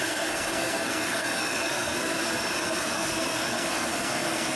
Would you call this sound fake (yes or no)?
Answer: yes